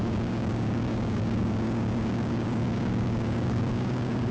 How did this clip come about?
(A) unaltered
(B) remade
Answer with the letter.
B